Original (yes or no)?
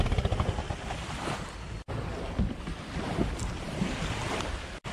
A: no